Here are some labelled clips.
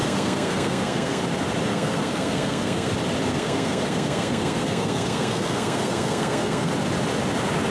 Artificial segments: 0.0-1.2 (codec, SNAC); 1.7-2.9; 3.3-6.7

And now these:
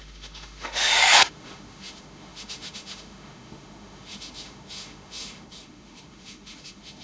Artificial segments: 0.0-7.0 (autoencoder, DAC-VAE)

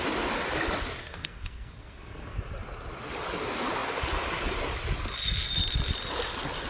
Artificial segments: 1.0-2.4 (codec, SNAC)

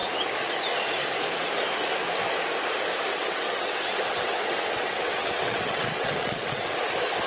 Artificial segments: 3.1-6.7 (vocoder, WaveNeXt)

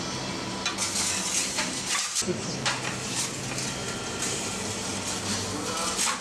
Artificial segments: 1.4-3.4 (vocoder, BigVGAN v2); 3.8-4.4

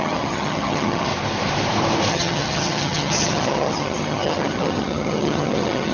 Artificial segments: 0.0-1.1 (vocoder, HiFi-GAN); 2.1-5.9